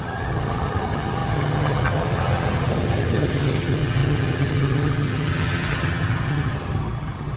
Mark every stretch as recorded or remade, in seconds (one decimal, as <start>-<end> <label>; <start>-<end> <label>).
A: 0.0-7.4 remade